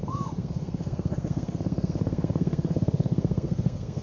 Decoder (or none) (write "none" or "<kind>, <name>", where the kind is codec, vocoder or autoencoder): codec, SNAC